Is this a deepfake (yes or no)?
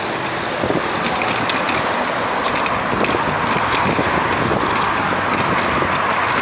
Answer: no